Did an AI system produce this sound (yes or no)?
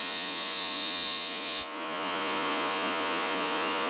yes